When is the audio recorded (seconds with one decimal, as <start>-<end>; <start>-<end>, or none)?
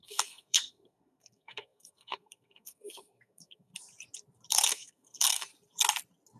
3.7-4.7; 5.5-6.4